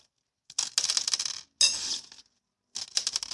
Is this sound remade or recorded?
recorded